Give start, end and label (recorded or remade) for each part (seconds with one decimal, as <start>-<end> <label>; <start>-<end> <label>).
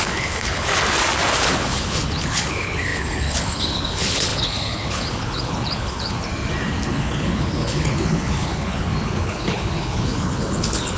0.0-0.7 remade; 0.7-1.4 recorded; 1.4-6.3 remade; 6.3-6.9 recorded; 6.9-11.0 remade